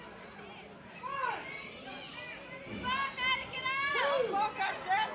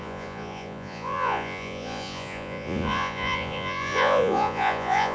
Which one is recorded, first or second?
first